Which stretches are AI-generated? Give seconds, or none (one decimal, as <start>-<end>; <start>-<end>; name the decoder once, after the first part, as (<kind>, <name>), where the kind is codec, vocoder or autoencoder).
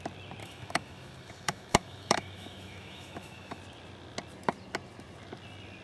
0.4-3.6 (autoencoder, DAC-VAE)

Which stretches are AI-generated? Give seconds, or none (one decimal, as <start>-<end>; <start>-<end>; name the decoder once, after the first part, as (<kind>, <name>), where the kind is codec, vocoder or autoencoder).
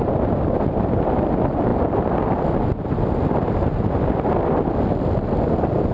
none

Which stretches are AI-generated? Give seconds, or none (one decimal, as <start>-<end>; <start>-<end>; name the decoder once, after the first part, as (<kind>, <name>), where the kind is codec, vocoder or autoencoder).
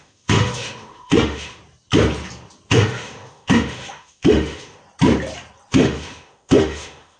0.0-1.6 (autoencoder, DAC-VAE); 2.7-4.8; 5.7-7.2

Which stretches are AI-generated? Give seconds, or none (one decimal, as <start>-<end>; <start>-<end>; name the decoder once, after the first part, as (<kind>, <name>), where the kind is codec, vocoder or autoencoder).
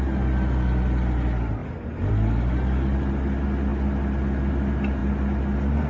none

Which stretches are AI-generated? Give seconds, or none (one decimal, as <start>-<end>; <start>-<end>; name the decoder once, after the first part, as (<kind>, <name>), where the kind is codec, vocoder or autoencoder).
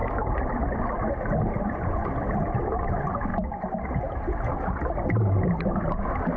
1.6-2.0 (vocoder, Vocos); 2.8-3.3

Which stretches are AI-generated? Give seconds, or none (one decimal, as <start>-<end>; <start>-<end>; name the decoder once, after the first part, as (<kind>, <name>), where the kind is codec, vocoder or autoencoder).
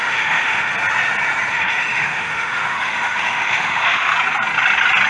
0.0-0.7 (autoencoder, DAC-VAE); 1.5-4.1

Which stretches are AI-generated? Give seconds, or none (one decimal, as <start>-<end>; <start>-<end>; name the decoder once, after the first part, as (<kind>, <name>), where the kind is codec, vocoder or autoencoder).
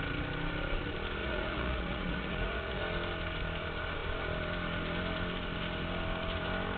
1.2-2.8 (vocoder, Vocos)